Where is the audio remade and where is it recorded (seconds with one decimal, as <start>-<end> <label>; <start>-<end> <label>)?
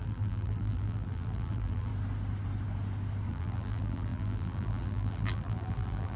0.0-1.9 remade; 1.9-3.3 recorded; 3.3-6.2 remade